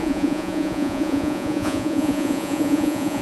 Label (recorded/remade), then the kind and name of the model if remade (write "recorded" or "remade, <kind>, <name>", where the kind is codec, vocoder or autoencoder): remade, vocoder, Vocos